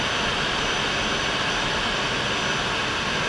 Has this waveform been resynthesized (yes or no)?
no